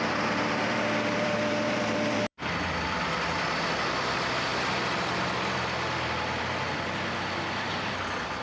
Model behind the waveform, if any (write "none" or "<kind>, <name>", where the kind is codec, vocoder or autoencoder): vocoder, BigVGAN v2